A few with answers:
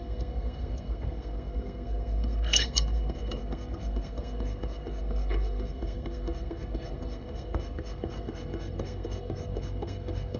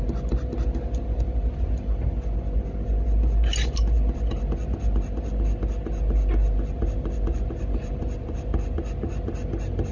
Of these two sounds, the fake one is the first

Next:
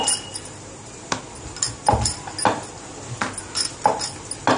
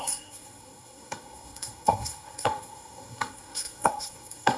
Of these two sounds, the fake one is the second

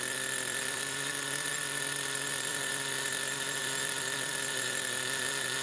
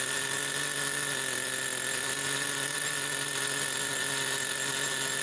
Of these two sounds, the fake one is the first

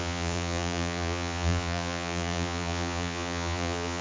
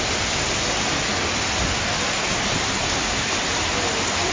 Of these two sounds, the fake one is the first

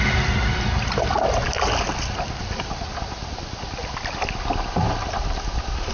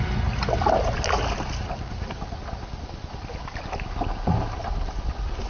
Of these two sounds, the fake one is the first